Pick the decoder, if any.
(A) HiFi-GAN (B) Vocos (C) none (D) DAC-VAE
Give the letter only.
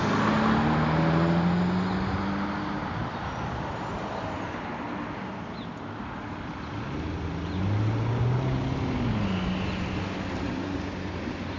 C